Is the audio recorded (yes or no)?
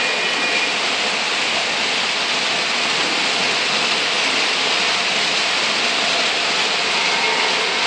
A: yes